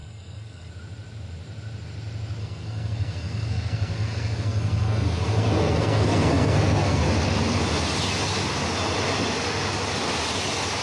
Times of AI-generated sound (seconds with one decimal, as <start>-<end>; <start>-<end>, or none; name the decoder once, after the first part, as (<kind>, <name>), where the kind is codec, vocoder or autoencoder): 0.0-0.7 (codec, SNAC); 2.4-7.0